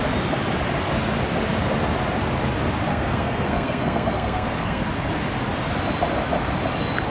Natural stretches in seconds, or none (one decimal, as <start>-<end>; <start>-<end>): 0.0-2.9; 4.8-7.1